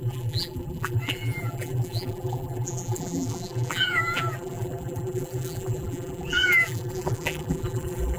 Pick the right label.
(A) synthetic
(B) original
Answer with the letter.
A